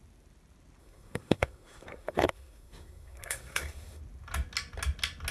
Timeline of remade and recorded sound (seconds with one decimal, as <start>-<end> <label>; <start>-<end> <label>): 0.0-0.8 recorded; 0.8-4.0 remade; 4.0-5.3 recorded